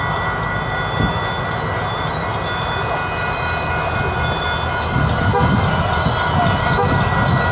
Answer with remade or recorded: recorded